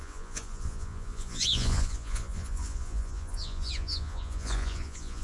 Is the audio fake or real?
fake